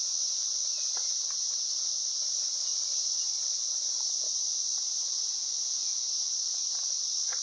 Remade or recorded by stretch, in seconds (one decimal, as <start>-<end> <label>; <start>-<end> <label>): 0.0-4.4 recorded; 4.4-5.2 remade; 5.2-7.4 recorded